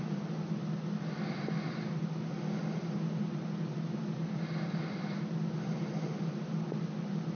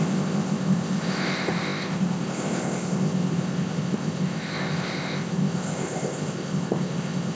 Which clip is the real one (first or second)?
first